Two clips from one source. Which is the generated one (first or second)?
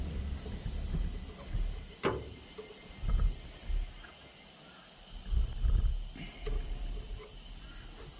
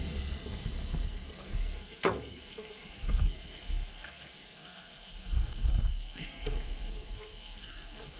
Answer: second